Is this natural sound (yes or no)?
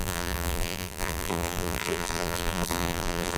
no